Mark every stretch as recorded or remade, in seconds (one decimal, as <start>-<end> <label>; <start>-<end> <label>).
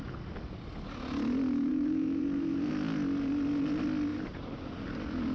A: 0.0-1.7 recorded; 1.7-2.7 remade; 2.7-4.1 recorded; 4.1-4.8 remade; 4.8-5.3 recorded